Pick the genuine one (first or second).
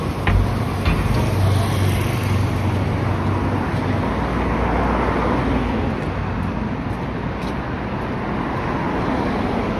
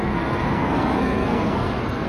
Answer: first